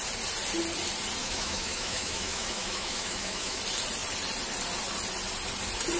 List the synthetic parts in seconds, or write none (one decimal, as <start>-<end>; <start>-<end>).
1.2-3.6